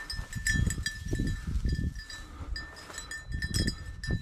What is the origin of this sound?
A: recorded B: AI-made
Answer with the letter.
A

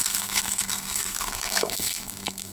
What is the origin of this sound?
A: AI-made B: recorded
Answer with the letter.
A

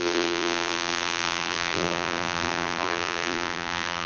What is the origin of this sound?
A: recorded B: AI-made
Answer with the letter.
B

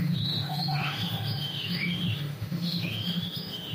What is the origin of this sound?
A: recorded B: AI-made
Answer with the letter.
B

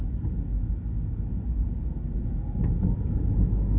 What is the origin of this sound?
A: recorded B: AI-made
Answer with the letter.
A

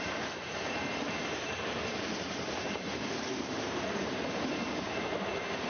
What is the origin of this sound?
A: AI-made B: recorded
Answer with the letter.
A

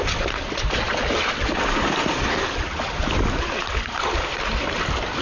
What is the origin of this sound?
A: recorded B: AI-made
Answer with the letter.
B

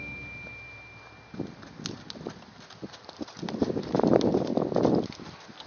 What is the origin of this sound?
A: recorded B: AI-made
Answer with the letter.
A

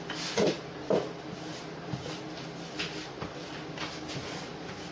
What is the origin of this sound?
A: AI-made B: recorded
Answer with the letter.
B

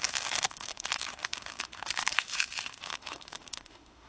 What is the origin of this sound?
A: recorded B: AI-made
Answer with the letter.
B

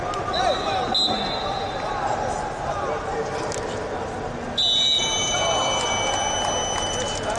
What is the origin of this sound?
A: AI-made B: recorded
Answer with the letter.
B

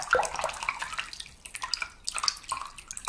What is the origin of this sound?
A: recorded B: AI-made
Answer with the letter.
A